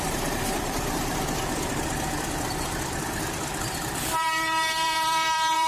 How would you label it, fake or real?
fake